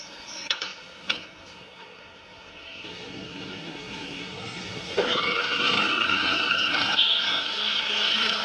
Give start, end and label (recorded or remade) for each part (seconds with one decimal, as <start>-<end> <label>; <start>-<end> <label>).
0.0-8.4 remade